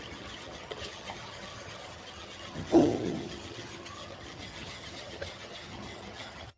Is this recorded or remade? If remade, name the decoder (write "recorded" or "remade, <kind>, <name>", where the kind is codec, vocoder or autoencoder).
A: remade, vocoder, HiFi-GAN